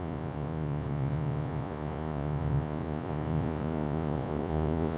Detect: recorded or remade remade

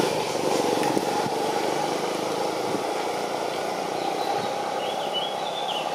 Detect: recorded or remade recorded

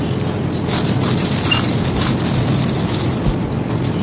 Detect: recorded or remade recorded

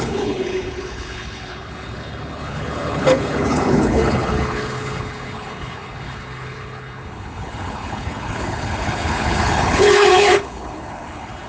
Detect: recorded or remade remade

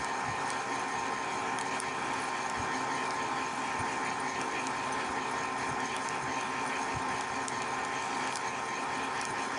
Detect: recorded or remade recorded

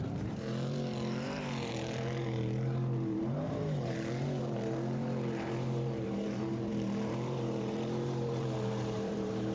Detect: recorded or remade remade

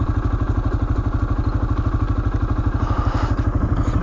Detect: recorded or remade recorded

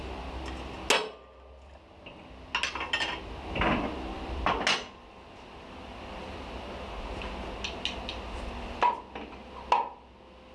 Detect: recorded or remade recorded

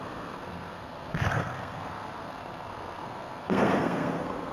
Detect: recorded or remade remade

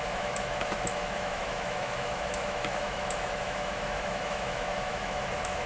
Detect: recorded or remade remade